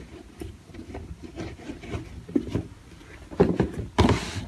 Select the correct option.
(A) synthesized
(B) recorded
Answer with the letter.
B